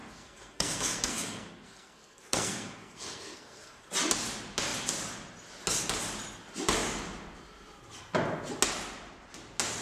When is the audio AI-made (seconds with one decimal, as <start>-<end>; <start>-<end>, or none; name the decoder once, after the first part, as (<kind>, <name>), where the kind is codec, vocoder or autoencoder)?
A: 0.0-3.9 (codec, SNAC)